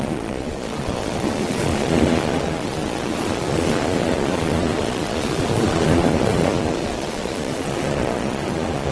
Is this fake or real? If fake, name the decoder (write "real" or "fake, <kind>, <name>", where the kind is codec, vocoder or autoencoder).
fake, vocoder, Vocos